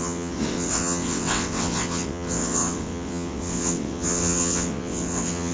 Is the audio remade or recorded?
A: remade